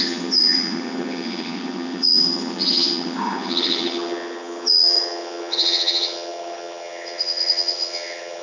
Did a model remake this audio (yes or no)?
yes